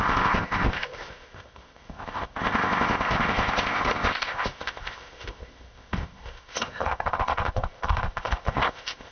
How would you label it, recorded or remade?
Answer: remade